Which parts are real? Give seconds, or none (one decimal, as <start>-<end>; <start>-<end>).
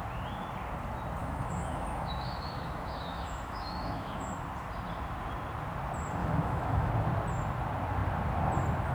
0.0-1.2; 4.3-6.2; 6.9-8.9